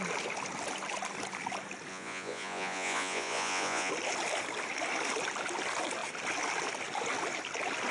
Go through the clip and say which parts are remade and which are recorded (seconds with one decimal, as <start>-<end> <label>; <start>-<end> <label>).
0.0-1.9 recorded; 1.9-3.9 remade; 3.9-7.9 recorded

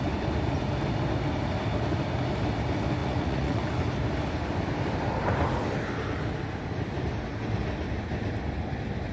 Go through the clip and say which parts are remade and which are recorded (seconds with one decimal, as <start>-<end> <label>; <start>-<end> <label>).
0.0-3.0 recorded; 3.0-3.6 remade; 3.6-9.1 recorded

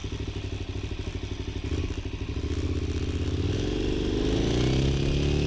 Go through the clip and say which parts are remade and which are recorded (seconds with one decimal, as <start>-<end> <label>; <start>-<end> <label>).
0.0-5.5 recorded

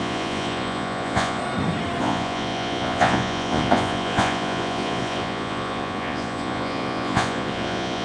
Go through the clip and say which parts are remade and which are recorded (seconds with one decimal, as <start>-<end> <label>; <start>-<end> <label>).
0.0-1.4 remade; 1.4-2.0 recorded; 2.0-8.0 remade

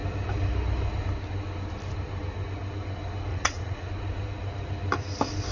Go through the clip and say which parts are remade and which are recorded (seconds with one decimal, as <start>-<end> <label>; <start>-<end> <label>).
0.0-3.3 recorded; 3.3-3.9 remade; 3.9-5.5 recorded

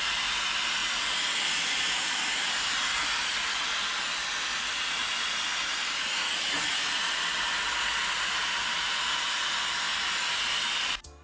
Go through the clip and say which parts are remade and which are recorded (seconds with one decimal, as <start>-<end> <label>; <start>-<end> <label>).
0.0-6.2 recorded; 6.2-7.2 remade; 7.2-11.2 recorded

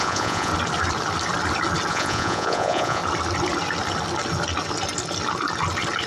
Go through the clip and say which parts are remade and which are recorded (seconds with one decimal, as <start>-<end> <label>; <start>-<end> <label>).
0.0-0.5 remade; 0.5-1.9 recorded; 1.9-3.0 remade; 3.0-6.1 recorded

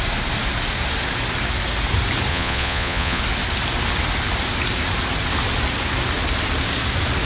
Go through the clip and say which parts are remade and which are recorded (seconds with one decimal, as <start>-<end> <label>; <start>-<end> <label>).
0.0-2.3 recorded; 2.3-3.2 remade; 3.2-7.3 recorded